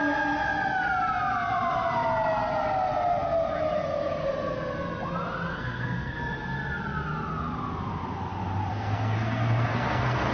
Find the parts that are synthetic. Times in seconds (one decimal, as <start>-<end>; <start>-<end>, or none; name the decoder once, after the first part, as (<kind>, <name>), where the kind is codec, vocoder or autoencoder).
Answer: 5.5-6.2 (codec, SNAC); 8.7-10.3